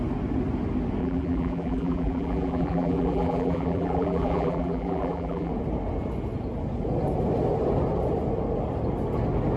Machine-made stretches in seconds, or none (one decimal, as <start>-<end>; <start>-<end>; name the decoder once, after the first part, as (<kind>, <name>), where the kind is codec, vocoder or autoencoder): 1.0-5.5 (vocoder, BigVGAN v2)